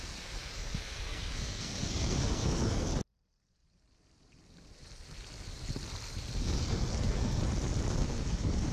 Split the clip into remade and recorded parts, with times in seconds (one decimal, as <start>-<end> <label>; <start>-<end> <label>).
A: 0.0-2.9 remade; 2.9-6.4 recorded; 6.4-7.4 remade; 7.4-7.9 recorded; 7.9-8.7 remade